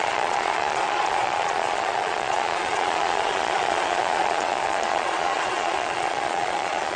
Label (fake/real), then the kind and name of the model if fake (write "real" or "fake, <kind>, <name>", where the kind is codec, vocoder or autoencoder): fake, vocoder, Vocos